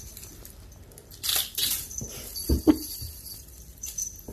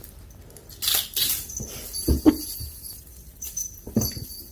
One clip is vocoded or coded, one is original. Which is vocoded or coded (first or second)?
first